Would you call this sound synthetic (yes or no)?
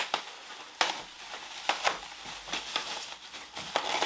no